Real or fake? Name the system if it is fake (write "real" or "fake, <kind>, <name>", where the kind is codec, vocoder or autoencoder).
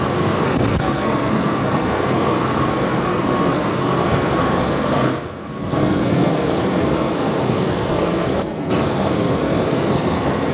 fake, codec, SNAC